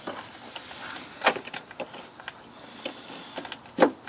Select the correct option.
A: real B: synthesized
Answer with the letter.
A